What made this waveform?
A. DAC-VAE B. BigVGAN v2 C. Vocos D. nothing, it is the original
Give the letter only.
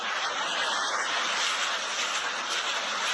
D